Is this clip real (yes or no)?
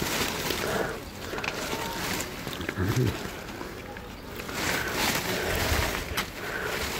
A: yes